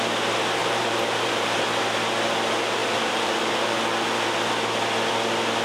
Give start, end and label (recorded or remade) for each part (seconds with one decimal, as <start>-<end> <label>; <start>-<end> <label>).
0.0-0.6 recorded; 0.6-1.8 remade; 1.8-2.8 recorded; 2.8-3.8 remade; 3.8-5.6 recorded